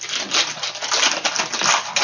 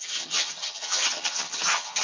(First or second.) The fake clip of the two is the second